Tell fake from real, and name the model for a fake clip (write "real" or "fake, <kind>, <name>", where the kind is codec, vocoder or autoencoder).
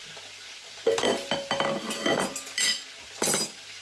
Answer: real